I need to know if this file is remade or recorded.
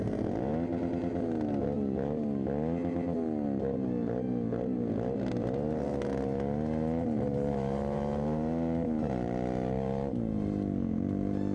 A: recorded